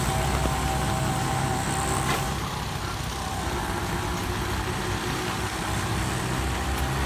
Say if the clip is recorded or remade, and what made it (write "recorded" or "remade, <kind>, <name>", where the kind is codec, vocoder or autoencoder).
recorded